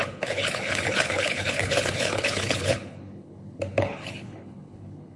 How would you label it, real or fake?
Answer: fake